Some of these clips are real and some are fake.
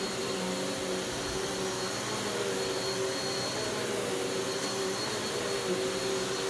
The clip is real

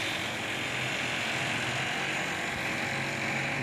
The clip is real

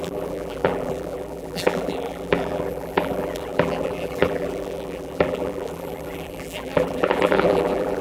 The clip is fake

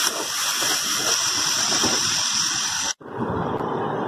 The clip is fake